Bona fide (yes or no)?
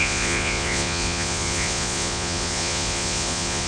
no